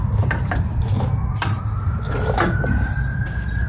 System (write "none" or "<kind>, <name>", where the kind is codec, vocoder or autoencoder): none